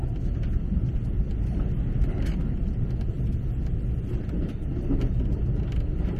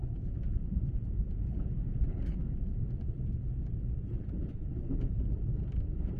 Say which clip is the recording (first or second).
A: first